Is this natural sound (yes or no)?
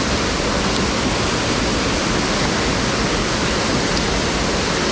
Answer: yes